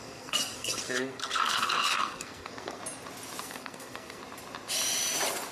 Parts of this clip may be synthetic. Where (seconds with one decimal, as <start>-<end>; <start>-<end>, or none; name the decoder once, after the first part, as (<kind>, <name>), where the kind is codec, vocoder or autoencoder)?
0.0-2.8 (codec, SNAC); 3.4-4.2